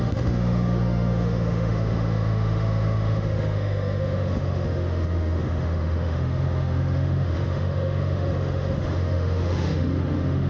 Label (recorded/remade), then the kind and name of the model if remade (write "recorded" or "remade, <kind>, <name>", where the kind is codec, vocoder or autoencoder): remade, autoencoder, DAC-VAE